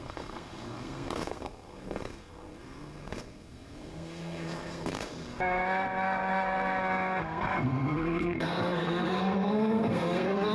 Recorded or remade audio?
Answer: remade